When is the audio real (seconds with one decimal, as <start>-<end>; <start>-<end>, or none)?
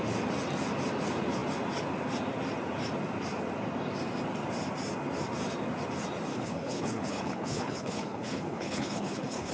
0.0-6.3